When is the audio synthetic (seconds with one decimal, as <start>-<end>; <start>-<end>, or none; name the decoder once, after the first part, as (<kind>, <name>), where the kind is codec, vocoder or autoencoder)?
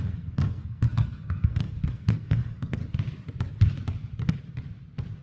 0.0-2.8 (codec, SNAC)